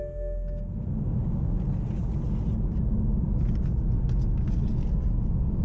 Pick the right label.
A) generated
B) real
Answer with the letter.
B